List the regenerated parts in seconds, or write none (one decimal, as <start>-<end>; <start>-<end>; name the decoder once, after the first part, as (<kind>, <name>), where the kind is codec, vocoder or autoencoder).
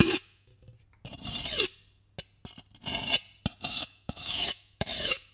0.0-0.5 (autoencoder, DAC-VAE); 3.7-5.3